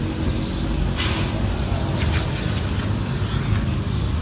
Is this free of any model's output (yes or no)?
yes